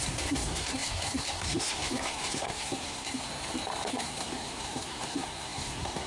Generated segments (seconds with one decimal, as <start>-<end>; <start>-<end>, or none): 0.0-3.3; 3.9-6.1